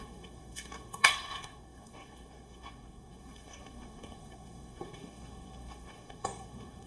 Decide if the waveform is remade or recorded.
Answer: remade